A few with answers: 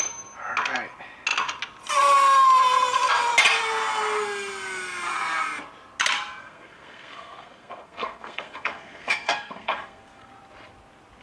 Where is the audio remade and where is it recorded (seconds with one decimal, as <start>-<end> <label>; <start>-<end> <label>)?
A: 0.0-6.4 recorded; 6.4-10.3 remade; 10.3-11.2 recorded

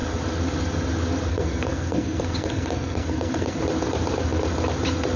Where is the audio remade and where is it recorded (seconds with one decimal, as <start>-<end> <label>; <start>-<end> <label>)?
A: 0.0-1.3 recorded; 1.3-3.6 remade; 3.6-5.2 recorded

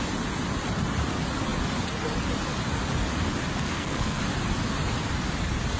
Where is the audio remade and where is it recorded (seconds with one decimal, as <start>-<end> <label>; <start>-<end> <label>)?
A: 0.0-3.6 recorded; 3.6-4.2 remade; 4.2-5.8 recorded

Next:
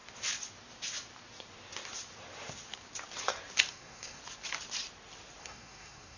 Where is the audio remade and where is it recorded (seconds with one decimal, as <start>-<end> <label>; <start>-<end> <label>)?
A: 0.0-3.7 recorded; 3.7-4.2 remade; 4.2-5.4 recorded; 5.4-6.2 remade

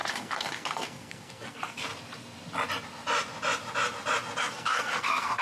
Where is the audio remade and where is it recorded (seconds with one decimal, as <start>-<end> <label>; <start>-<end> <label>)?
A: 0.0-1.9 remade; 1.9-4.4 recorded; 4.4-5.4 remade